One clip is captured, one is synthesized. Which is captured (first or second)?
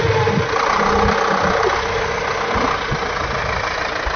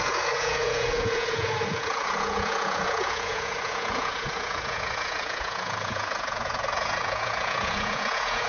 first